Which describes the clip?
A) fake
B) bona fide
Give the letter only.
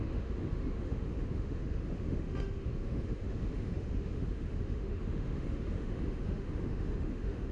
A